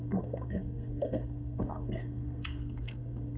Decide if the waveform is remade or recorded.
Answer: remade